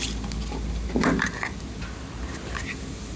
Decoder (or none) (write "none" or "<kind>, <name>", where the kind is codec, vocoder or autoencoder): none